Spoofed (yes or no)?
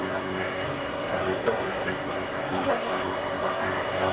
yes